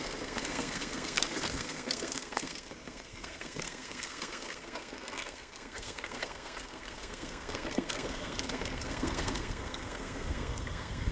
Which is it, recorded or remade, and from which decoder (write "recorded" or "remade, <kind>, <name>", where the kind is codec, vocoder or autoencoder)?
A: remade, codec, SNAC